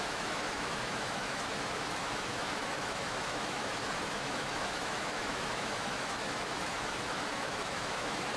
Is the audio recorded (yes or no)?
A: no